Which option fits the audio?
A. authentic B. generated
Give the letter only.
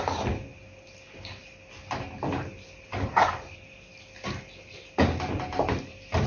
A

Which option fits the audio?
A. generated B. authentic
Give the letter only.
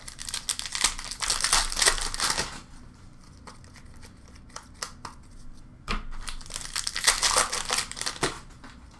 B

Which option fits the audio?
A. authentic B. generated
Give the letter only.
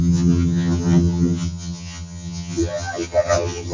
B